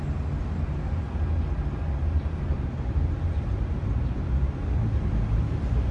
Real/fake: real